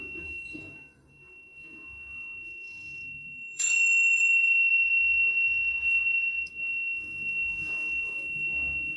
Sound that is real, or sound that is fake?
fake